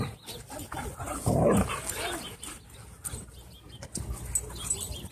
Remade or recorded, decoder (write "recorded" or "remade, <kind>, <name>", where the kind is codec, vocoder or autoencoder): recorded